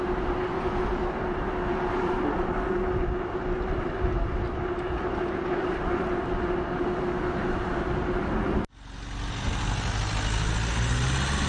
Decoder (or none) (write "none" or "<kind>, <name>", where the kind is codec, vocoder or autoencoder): none